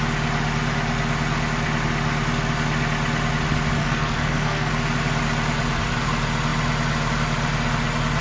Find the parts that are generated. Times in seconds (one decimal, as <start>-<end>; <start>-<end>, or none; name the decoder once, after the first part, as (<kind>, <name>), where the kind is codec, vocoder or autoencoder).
3.8-4.7 (codec, SNAC)

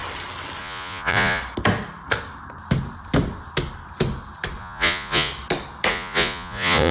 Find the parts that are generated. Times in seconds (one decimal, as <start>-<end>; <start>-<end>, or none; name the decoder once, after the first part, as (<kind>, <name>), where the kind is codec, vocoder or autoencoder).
0.6-1.4 (vocoder, Vocos); 4.6-5.3; 5.9-6.9

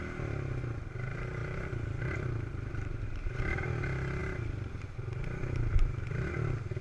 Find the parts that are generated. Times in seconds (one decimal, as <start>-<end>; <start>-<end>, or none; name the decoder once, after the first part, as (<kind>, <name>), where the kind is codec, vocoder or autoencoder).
1.4-3.4 (vocoder, BigVGAN v2)

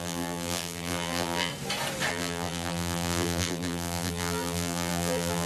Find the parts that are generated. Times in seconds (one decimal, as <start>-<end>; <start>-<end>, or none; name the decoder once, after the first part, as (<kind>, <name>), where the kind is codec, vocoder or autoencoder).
0.0-1.5 (vocoder, BigVGAN v2); 2.1-5.5